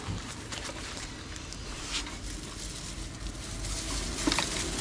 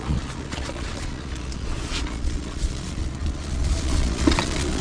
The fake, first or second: second